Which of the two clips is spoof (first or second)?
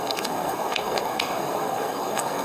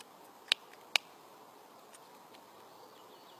first